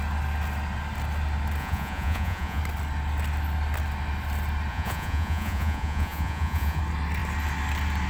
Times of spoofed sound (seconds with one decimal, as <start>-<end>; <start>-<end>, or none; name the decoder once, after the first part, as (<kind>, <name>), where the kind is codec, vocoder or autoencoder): 1.6-2.6 (vocoder, Vocos); 4.7-6.8